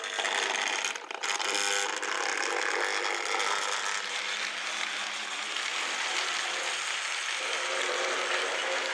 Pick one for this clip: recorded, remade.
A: recorded